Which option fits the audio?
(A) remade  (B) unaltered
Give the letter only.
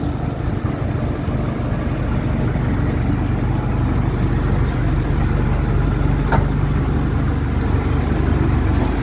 B